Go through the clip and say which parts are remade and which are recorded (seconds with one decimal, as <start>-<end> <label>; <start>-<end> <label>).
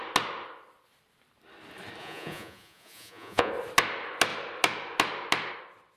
0.0-2.0 recorded; 2.0-3.5 remade; 3.5-6.0 recorded